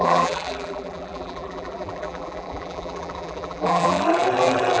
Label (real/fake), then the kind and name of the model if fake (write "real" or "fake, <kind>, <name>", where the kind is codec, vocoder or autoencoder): fake, vocoder, BigVGAN v2